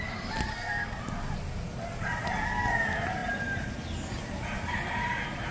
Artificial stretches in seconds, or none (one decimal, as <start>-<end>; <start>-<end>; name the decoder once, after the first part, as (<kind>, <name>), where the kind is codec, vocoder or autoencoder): 0.5-1.0 (codec, SNAC)